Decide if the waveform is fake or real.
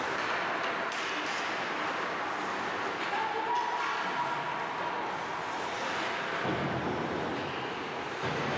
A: real